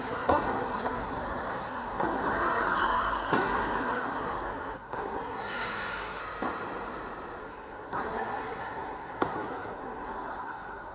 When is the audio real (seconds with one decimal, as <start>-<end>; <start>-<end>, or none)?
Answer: 6.2-7.4